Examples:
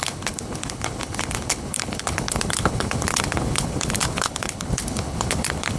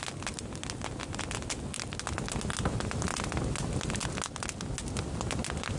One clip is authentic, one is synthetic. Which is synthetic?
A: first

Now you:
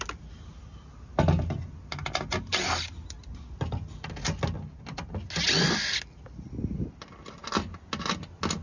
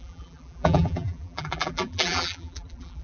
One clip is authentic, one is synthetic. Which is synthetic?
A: second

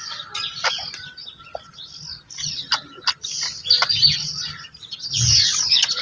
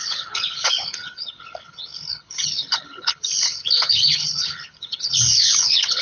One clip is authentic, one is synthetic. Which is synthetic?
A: second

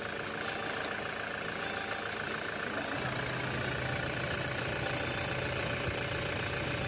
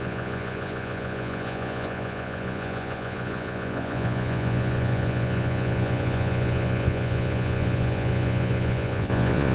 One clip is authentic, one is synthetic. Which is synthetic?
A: second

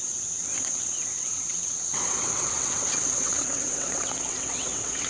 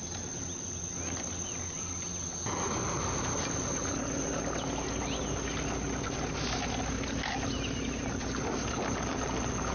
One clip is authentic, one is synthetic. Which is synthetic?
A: first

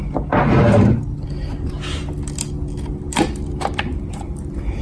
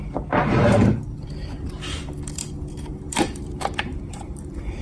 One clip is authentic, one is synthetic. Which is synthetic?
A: second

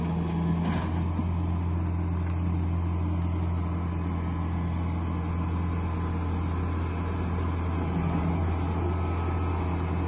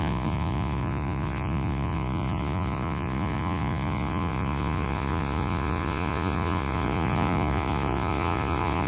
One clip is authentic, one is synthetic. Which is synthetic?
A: second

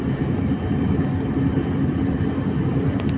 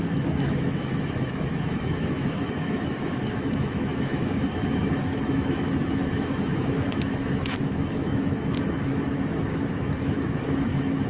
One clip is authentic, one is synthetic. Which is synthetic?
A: second